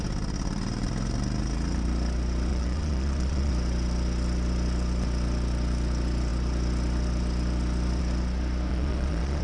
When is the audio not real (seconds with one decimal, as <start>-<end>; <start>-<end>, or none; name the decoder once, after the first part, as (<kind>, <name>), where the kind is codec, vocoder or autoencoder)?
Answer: 2.5-3.5 (vocoder, Vocos); 8.7-9.4

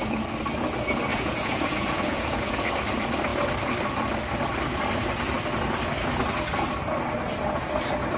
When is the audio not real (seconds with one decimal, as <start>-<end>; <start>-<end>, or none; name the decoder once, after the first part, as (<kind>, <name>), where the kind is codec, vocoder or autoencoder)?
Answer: 1.1-2.7 (vocoder, Vocos)

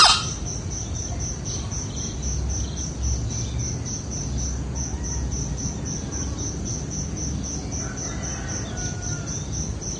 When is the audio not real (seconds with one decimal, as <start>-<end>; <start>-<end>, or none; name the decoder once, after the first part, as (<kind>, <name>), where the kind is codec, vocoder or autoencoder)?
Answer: none

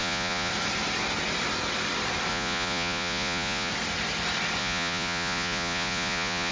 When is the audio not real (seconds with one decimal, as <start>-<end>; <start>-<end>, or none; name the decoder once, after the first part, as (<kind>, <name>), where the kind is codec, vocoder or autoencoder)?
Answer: 0.0-0.5 (vocoder, Vocos); 2.3-3.7; 4.6-6.5

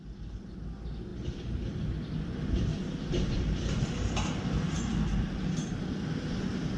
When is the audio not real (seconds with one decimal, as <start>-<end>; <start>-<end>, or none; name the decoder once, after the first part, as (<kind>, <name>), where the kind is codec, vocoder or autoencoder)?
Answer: none

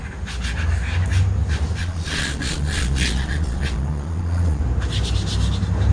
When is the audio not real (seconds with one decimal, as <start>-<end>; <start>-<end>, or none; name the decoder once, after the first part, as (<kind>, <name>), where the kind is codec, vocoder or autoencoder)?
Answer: 1.8-4.6 (vocoder, Vocos)

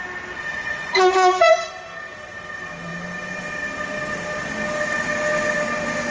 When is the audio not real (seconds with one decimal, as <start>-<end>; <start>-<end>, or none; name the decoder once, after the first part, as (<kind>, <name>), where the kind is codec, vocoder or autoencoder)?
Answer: 0.5-1.7 (vocoder, Vocos)